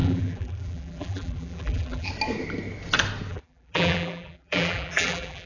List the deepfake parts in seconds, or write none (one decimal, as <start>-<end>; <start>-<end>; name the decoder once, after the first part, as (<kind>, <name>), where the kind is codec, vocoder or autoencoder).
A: 0.0-2.1 (vocoder, BigVGAN v2); 3.3-5.5